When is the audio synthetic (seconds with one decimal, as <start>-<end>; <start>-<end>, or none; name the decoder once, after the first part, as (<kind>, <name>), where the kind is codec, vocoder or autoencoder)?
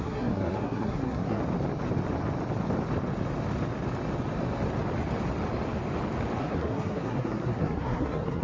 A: 0.0-1.4 (codec, SNAC); 6.4-8.4